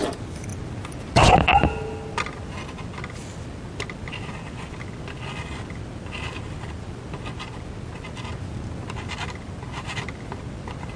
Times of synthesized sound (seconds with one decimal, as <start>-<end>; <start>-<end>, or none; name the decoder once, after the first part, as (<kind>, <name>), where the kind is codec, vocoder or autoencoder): none